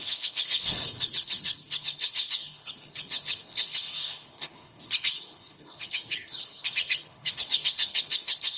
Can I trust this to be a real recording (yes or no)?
no